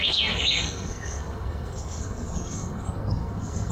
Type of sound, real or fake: fake